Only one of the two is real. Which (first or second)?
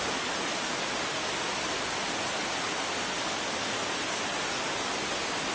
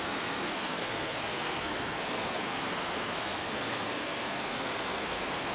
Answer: first